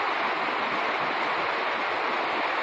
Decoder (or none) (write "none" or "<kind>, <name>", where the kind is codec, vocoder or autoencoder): none